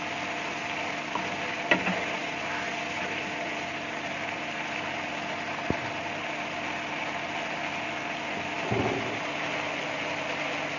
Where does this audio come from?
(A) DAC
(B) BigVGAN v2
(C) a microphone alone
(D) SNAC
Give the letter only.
C